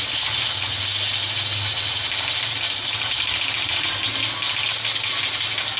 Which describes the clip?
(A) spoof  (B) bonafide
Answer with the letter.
B